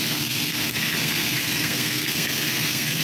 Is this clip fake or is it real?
fake